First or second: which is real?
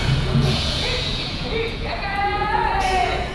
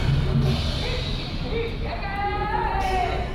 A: second